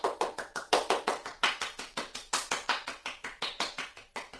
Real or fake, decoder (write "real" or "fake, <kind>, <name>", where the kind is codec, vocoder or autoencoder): fake, vocoder, WaveNeXt